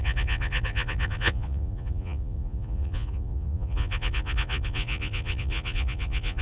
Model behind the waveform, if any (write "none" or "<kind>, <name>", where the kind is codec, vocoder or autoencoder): vocoder, Vocos